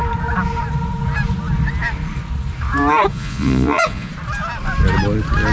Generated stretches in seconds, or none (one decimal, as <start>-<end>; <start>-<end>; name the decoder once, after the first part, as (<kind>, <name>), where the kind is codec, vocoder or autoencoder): 3.1-4.1 (vocoder, Vocos)